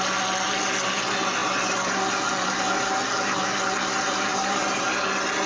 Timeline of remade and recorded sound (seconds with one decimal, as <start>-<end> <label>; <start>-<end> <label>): 0.0-4.3 recorded; 4.3-5.0 remade; 5.0-5.5 recorded